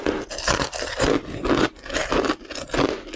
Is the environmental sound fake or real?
real